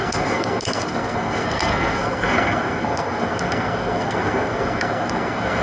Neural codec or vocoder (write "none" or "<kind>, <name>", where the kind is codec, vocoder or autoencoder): codec, SNAC